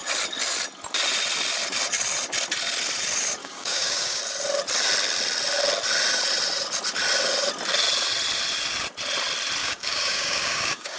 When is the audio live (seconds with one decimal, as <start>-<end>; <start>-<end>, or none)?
0.0-3.4; 4.2-9.6